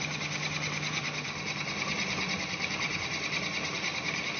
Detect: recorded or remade recorded